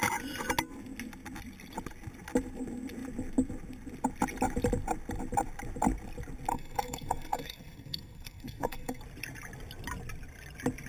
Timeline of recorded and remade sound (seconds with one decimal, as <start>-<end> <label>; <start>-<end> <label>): 0.0-6.5 recorded; 6.5-9.0 remade; 9.0-10.9 recorded